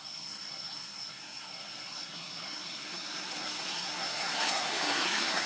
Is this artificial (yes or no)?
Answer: yes